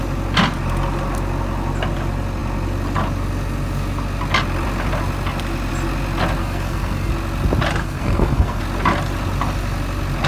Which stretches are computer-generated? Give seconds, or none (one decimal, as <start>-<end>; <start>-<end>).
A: 6.4-7.1; 7.8-8.6

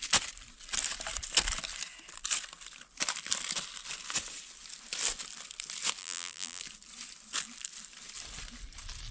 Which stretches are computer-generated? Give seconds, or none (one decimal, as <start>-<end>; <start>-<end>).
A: 6.0-6.6

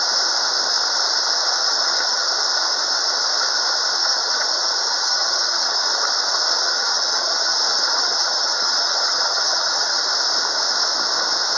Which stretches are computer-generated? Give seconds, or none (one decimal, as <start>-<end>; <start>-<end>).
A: 1.4-2.3; 4.0-5.9; 6.6-10.0

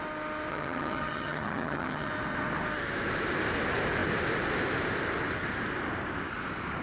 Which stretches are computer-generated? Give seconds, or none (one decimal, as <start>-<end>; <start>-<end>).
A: 0.5-2.1

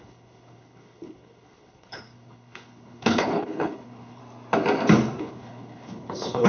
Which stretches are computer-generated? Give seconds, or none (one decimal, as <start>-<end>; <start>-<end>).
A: 0.0-4.2; 5.2-6.5

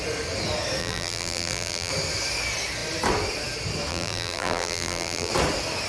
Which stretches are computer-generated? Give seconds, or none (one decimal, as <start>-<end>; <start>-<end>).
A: 0.8-1.9; 3.9-5.3